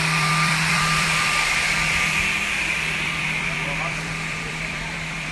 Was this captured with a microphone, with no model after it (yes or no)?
no